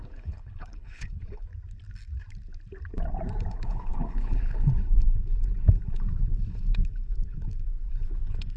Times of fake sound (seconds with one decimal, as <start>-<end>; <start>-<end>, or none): 0.0-1.5; 3.5-8.6